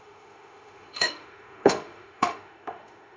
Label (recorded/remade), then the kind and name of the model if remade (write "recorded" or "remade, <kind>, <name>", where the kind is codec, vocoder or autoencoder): remade, autoencoder, DAC-VAE